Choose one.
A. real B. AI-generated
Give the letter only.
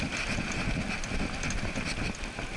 A